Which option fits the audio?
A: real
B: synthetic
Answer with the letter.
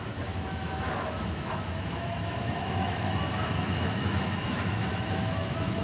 B